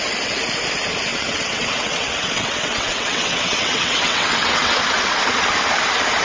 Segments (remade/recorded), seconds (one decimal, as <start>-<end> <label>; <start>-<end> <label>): 0.0-1.1 recorded; 1.1-4.8 remade; 4.8-6.2 recorded